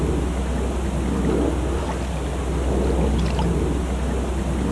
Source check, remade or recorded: recorded